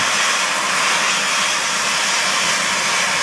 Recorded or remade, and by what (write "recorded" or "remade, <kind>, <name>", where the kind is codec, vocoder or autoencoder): recorded